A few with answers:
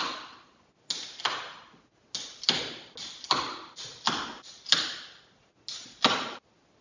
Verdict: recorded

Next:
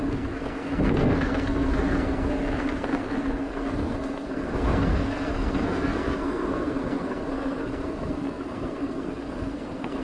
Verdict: remade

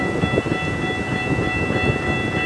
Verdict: recorded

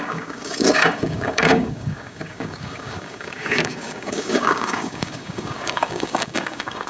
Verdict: remade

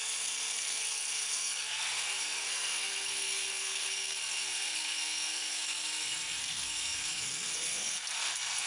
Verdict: remade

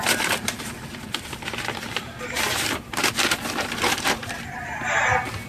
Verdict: remade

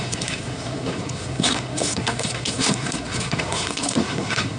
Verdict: remade